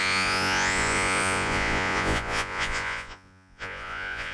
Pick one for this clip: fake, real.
fake